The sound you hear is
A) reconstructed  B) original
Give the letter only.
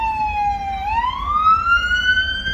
B